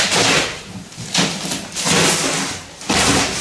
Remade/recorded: recorded